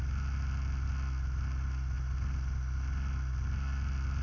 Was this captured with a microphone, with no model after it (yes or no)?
yes